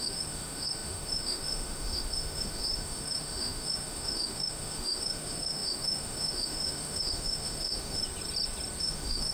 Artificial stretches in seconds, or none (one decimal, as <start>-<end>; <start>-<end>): 0.0-8.0; 8.8-9.3